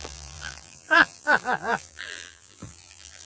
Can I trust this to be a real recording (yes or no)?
no